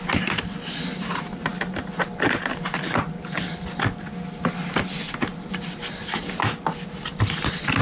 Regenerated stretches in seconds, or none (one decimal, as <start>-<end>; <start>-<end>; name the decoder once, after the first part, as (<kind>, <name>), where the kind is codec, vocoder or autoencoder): none

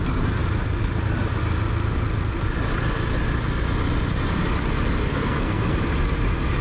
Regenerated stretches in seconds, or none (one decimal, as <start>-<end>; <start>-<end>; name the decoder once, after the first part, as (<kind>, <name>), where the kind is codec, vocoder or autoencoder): 5.1-5.8 (codec, SNAC)

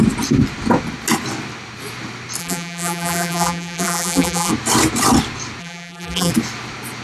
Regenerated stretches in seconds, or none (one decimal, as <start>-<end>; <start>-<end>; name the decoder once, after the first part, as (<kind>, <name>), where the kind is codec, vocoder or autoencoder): 2.4-4.5 (vocoder, BigVGAN v2); 5.6-6.3